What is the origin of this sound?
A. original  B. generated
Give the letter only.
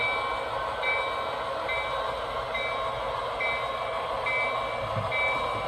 A